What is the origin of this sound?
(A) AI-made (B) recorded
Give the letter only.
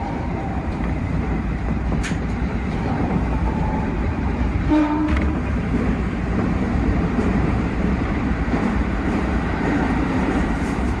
A